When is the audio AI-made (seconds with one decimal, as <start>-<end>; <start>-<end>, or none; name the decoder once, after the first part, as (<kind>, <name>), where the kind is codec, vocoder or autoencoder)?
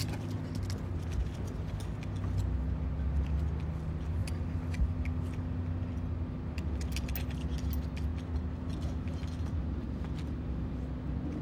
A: none